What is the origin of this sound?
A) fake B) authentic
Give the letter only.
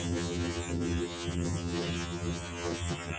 A